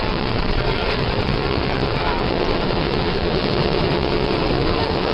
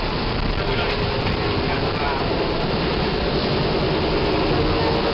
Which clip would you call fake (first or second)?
first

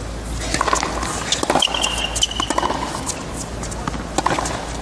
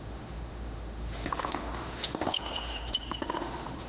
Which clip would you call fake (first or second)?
second